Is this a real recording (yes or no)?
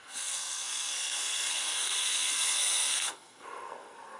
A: no